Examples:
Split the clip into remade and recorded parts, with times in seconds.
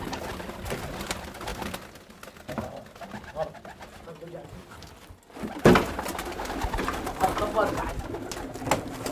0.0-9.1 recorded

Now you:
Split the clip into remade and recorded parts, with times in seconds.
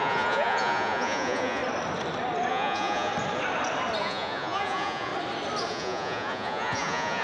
0.0-1.6 remade; 1.6-2.5 recorded; 2.5-3.1 remade; 3.1-4.0 recorded; 4.0-5.1 remade; 5.1-5.7 recorded; 5.7-7.2 remade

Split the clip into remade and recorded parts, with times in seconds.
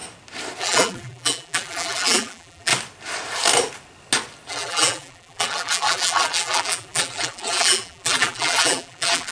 0.0-0.6 recorded; 0.6-2.7 remade; 2.7-4.5 recorded; 4.5-9.3 remade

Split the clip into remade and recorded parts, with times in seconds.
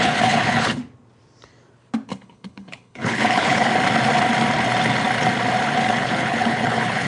0.0-0.8 remade; 0.8-2.1 recorded; 2.1-3.7 remade; 3.7-5.9 recorded; 5.9-7.1 remade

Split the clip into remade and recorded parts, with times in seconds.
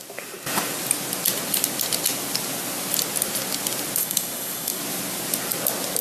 0.0-4.0 recorded; 4.0-4.8 remade; 4.8-6.0 recorded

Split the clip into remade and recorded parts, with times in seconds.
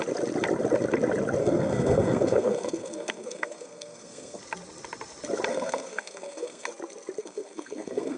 0.0-1.4 recorded; 1.4-4.4 remade; 4.4-5.5 recorded; 5.5-6.7 remade; 6.7-7.2 recorded; 7.2-8.2 remade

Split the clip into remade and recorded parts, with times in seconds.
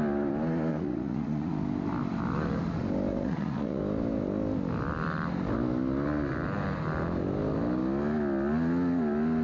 0.0-0.7 recorded; 0.7-1.5 remade; 1.5-3.1 recorded; 3.1-3.8 remade; 3.8-9.4 recorded